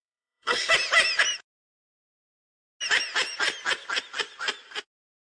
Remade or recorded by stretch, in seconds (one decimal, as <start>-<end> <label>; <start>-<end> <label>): 0.0-0.7 remade; 0.7-5.2 recorded